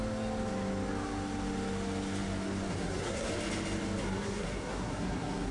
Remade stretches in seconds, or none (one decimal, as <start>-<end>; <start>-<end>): 2.7-3.3; 4.0-5.5